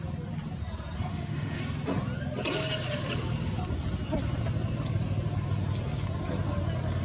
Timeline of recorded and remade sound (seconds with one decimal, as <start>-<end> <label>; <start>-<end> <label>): 0.0-1.1 recorded; 1.1-1.6 remade; 1.6-7.0 recorded